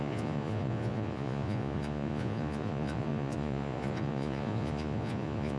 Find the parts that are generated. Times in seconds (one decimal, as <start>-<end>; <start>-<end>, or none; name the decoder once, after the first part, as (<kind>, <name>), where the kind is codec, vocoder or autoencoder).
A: 0.0-5.6 (vocoder, Vocos)